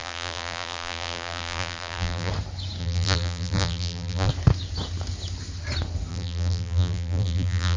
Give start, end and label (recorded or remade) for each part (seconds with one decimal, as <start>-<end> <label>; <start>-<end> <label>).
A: 0.0-2.3 remade; 2.3-2.8 recorded; 2.8-4.3 remade; 4.3-6.1 recorded; 6.1-7.8 remade